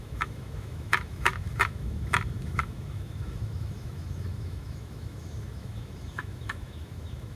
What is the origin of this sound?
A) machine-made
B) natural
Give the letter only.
A